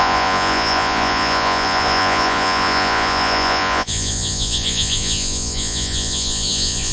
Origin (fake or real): fake